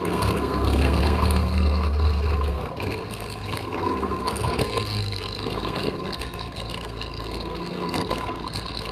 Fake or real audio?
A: fake